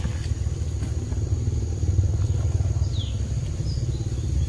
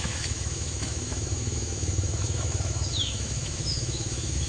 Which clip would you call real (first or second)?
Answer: first